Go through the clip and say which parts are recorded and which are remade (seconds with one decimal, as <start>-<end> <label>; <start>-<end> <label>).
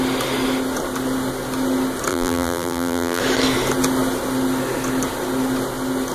0.0-2.1 recorded; 2.1-3.2 remade; 3.2-6.1 recorded